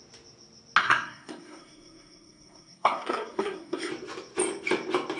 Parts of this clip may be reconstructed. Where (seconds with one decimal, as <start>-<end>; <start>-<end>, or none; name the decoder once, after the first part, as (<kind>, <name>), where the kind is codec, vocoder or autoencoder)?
0.8-3.9 (codec, SNAC)